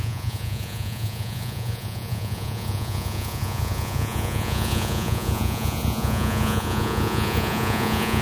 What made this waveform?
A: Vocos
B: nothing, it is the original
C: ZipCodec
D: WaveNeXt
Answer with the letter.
A